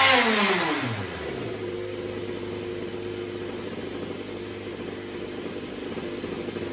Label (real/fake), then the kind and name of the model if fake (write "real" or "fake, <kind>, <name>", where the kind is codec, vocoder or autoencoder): real